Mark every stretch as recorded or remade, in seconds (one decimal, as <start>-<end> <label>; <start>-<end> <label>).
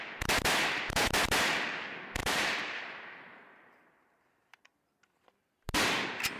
0.0-2.2 recorded; 2.2-4.6 remade; 4.6-6.4 recorded